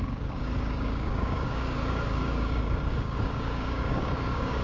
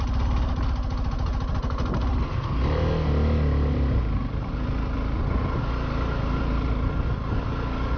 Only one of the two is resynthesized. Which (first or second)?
first